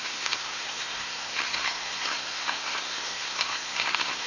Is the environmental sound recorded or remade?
remade